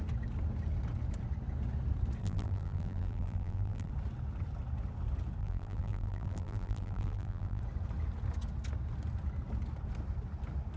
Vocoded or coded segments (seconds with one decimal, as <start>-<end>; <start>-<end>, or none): 2.2-3.9; 5.4-7.6